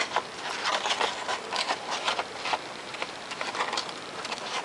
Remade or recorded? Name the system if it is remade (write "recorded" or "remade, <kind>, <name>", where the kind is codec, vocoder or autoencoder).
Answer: recorded